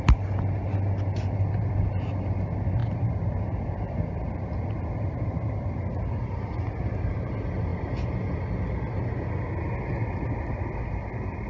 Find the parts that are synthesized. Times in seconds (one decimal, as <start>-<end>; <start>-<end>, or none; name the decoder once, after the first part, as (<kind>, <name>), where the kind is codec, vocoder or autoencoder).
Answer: none